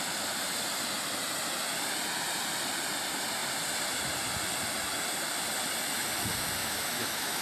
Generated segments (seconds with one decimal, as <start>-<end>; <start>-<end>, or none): 6.6-7.4